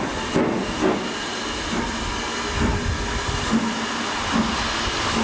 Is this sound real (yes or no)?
yes